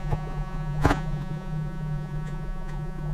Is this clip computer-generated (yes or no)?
yes